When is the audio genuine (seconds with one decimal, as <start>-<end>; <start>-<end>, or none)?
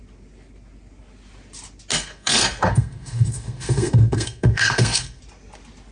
0.0-1.9; 5.2-5.9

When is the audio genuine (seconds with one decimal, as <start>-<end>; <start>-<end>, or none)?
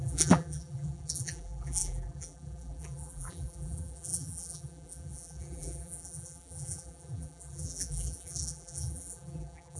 none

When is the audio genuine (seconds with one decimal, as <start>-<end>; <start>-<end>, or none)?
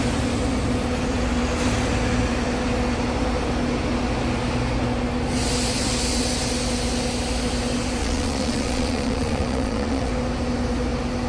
0.0-8.0; 10.1-11.3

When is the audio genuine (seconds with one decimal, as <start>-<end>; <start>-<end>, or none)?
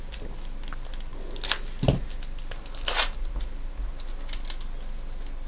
0.0-5.5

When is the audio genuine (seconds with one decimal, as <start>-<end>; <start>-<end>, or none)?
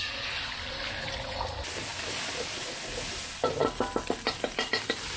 0.0-5.2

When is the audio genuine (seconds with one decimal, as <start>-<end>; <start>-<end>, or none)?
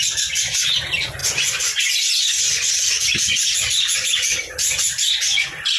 0.0-1.2; 2.7-5.8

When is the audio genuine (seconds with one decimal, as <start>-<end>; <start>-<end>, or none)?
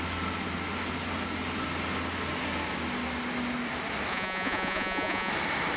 0.0-4.1; 5.3-5.8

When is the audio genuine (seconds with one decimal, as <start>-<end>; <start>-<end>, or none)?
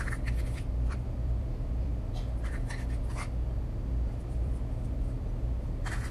1.9-4.1